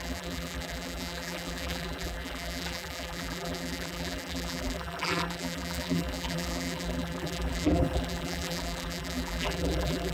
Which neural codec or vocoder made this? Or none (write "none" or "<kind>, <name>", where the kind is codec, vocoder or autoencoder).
vocoder, BigVGAN v2